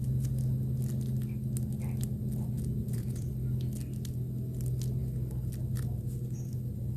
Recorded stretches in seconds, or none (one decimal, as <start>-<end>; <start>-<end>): 0.0-2.8; 3.3-7.0